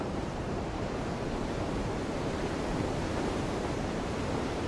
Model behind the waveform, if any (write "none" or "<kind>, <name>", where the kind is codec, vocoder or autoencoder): vocoder, BigVGAN v2